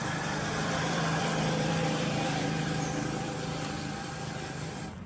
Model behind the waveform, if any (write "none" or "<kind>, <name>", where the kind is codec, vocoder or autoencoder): vocoder, BigVGAN v2